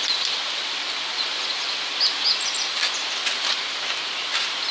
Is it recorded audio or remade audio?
recorded